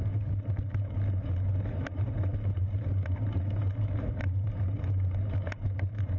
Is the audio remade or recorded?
remade